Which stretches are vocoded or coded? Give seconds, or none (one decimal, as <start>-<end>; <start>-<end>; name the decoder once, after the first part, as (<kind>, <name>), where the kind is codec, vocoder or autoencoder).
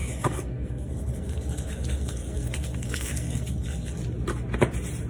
0.0-4.0 (codec, SNAC)